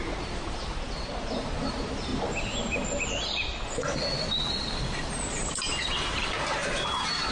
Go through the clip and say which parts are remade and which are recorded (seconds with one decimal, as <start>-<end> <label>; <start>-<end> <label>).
0.0-2.1 remade; 2.1-5.3 recorded; 5.3-7.3 remade